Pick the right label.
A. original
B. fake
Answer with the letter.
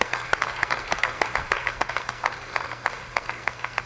B